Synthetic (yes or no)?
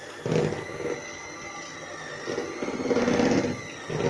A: no